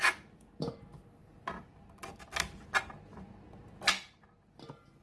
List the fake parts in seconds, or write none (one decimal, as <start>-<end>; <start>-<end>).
none